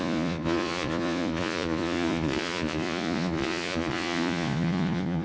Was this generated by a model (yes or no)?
yes